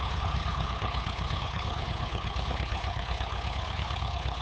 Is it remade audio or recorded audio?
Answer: remade